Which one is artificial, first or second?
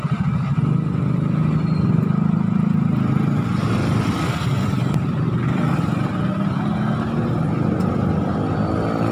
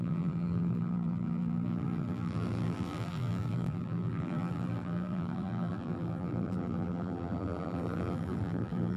second